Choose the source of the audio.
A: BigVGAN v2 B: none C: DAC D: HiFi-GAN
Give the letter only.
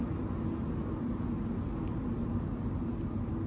B